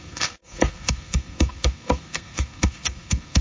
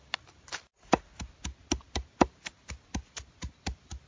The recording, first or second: second